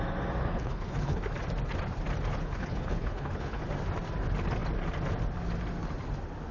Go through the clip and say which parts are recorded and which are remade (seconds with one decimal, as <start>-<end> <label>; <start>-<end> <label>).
0.0-0.4 recorded; 0.4-1.2 remade; 1.2-2.4 recorded; 2.4-3.6 remade; 3.6-6.5 recorded